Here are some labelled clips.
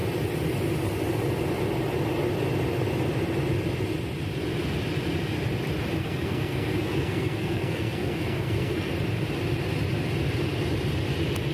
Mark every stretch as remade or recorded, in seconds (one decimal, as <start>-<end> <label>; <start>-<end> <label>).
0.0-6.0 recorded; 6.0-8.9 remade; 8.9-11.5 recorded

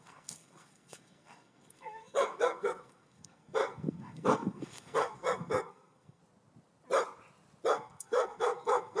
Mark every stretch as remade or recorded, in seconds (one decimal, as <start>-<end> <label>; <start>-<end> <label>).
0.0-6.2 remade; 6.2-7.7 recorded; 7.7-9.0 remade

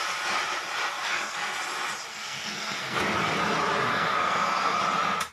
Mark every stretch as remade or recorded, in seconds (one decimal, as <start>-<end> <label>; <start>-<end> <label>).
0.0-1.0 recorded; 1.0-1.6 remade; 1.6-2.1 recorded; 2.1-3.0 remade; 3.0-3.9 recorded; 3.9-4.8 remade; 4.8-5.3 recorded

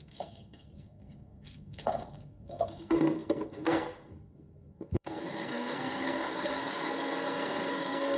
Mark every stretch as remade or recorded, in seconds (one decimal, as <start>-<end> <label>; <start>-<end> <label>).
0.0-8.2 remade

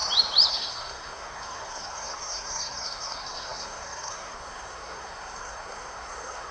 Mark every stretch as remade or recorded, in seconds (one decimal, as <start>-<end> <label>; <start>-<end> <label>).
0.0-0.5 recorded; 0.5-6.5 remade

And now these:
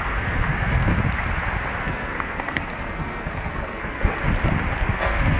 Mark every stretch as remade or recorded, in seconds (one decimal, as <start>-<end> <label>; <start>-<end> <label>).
0.0-0.9 remade; 0.9-1.8 recorded; 1.8-4.2 remade; 4.2-4.8 recorded; 4.8-5.4 remade